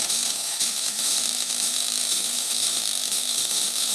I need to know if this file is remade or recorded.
remade